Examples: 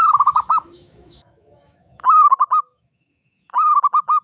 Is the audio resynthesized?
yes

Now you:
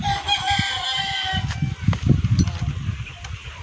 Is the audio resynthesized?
no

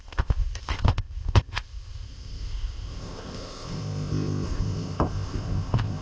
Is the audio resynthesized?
yes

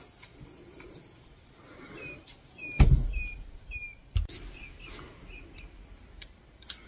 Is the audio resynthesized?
no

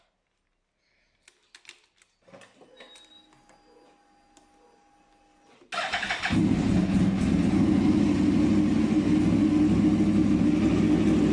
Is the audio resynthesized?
no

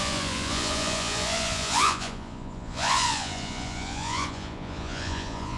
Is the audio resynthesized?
yes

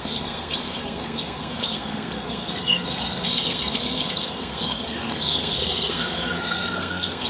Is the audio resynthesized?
yes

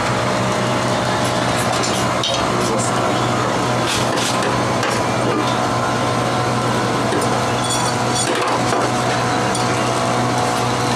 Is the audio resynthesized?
no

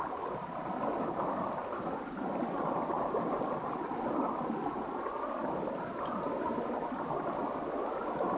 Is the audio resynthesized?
no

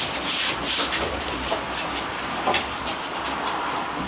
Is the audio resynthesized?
no